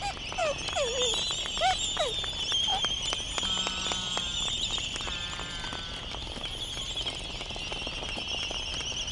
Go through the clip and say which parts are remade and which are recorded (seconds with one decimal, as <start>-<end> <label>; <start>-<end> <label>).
0.0-9.1 recorded